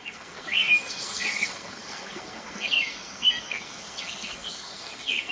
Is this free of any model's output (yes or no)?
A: no